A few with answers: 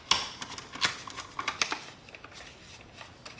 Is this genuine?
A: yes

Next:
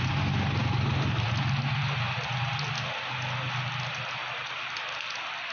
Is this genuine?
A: yes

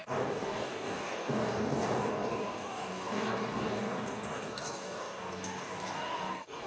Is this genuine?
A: no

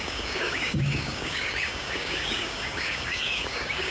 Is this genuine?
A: no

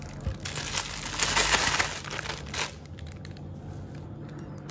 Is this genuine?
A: yes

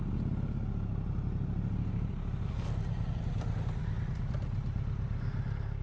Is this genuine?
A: yes